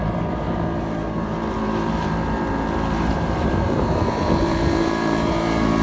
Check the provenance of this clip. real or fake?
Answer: fake